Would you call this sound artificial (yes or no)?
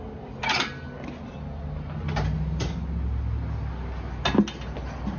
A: no